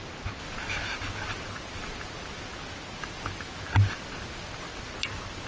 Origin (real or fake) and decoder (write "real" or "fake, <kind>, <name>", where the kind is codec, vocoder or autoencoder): real